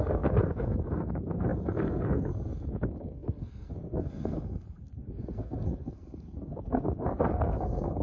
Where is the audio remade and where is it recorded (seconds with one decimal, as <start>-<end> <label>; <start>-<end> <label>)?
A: 0.0-8.0 remade